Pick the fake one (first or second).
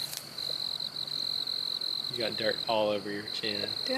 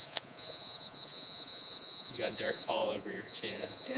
second